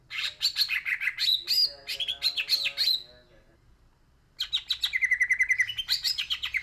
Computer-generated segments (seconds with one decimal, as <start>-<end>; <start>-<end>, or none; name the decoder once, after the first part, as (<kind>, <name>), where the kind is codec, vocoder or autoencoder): none